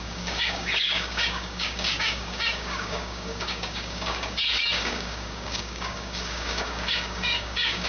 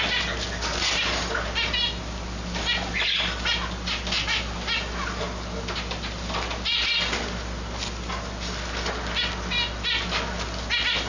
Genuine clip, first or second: second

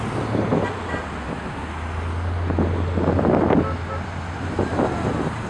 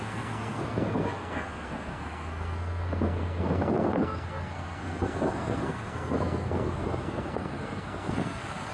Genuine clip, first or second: first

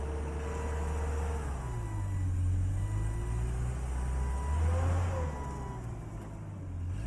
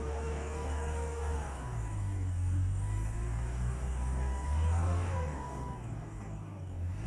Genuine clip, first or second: first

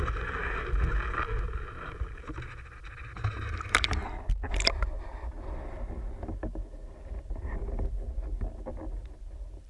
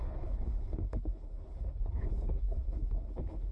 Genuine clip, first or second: first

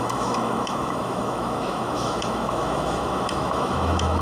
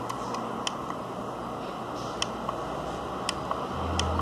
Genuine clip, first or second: second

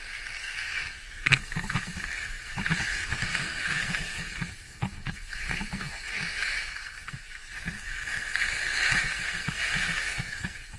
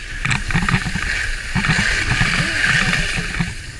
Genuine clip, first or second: second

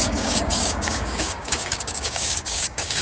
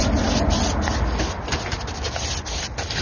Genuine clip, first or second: second